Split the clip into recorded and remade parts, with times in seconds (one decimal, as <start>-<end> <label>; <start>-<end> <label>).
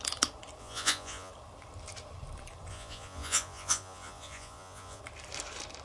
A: 0.0-0.6 recorded; 0.6-1.3 remade; 1.3-2.7 recorded; 2.7-5.0 remade; 5.0-5.8 recorded